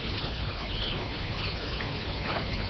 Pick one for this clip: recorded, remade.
remade